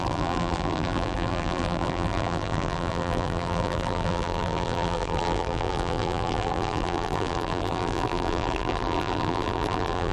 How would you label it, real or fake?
fake